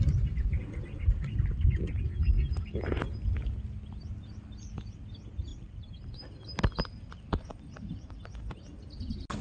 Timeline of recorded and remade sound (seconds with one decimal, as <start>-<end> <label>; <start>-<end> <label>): 0.0-5.5 recorded; 5.5-6.1 remade; 6.1-9.4 recorded